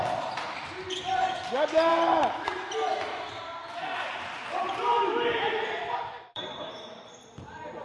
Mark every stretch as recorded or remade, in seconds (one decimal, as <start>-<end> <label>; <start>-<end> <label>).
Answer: 0.0-1.9 recorded; 1.9-6.4 remade; 6.4-7.8 recorded